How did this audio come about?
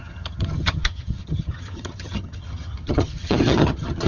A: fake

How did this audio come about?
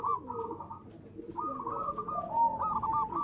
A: real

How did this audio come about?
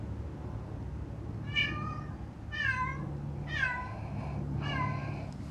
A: real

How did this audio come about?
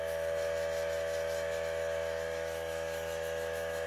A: fake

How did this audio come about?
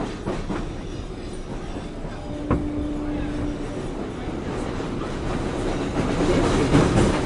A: real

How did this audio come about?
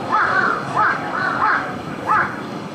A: fake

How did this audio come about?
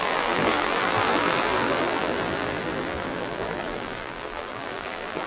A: fake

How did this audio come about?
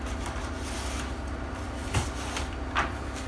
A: real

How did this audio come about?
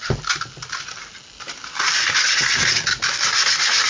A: real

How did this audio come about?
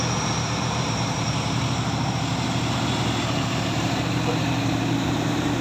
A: fake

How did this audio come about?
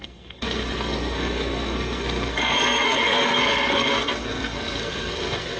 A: fake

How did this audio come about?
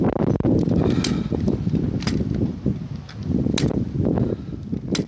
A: real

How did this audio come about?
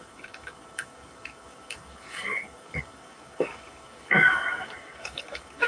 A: fake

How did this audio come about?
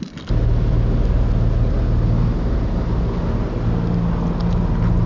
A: real